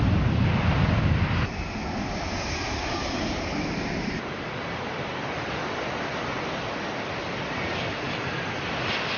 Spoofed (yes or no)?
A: no